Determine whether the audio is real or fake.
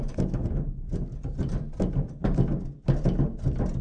real